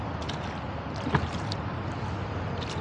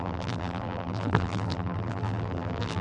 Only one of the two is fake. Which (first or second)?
second